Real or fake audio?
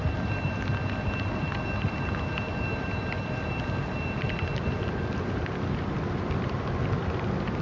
real